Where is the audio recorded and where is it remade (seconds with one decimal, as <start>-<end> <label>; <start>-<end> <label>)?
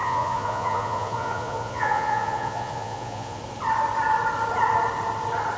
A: 0.0-3.4 remade; 3.4-5.6 recorded